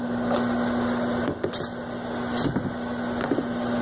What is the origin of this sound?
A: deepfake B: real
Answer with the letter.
B